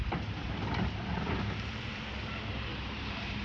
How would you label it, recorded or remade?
remade